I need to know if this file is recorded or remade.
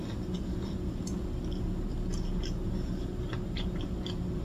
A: recorded